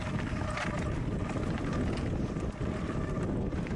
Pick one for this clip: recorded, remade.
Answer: recorded